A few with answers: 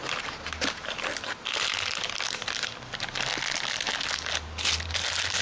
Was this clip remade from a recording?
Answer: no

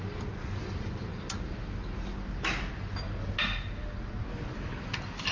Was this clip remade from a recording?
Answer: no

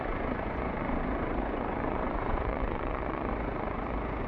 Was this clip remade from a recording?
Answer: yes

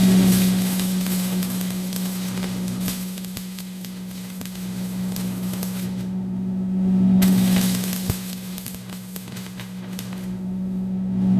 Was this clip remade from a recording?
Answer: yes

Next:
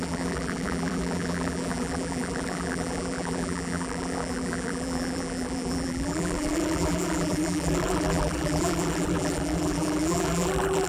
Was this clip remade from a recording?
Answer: yes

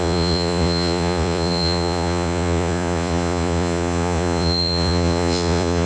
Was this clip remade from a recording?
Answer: yes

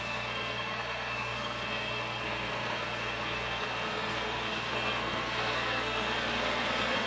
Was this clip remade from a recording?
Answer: yes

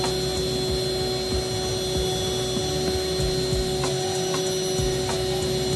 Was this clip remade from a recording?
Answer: no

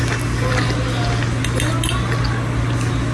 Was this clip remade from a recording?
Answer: no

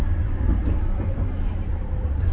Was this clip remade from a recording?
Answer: yes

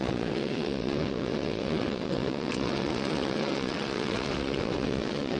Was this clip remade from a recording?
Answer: yes